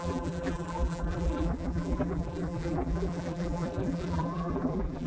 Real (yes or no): no